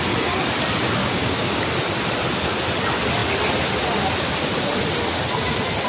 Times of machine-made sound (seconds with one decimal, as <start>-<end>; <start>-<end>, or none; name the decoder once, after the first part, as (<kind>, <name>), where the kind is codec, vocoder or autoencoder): 1.0-1.7 (codec, DAC)